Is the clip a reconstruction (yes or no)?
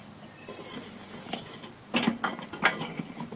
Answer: no